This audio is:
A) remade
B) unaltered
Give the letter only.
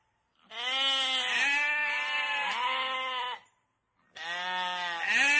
B